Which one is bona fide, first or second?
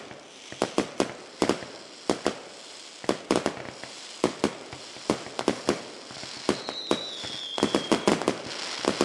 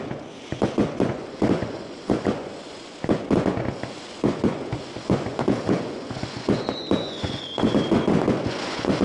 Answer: first